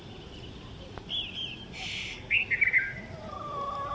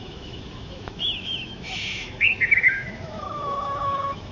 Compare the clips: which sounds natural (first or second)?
first